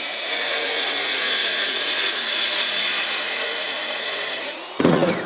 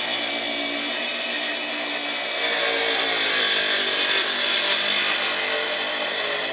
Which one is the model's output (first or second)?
first